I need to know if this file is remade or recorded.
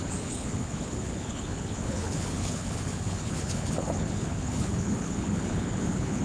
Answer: remade